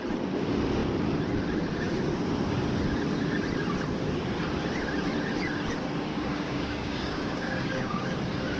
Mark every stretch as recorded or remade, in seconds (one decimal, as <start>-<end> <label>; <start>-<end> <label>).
0.0-6.1 recorded; 6.1-8.0 remade; 8.0-8.6 recorded